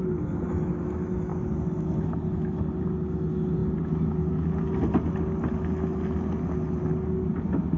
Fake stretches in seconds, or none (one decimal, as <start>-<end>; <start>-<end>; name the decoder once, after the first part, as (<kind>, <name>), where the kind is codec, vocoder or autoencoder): none